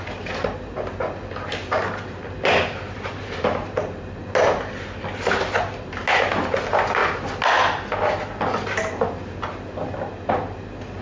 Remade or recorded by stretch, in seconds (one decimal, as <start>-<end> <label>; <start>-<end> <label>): 0.0-11.0 recorded